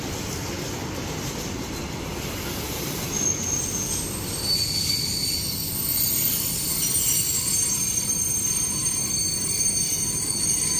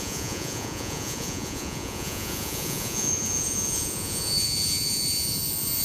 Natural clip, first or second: first